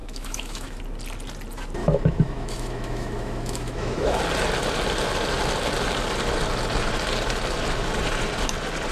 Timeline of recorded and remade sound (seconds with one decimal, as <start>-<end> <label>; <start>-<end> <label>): 0.0-0.8 remade; 0.8-1.8 recorded; 1.8-4.2 remade; 4.2-8.9 recorded